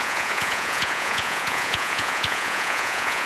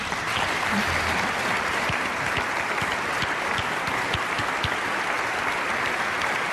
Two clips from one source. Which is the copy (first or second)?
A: first